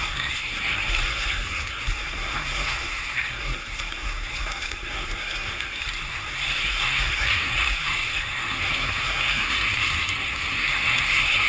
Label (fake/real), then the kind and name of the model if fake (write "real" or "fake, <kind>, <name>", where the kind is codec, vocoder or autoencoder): fake, codec, SNAC